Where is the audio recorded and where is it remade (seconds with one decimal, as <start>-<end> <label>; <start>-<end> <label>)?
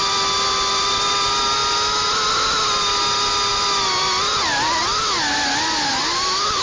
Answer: 0.0-6.6 recorded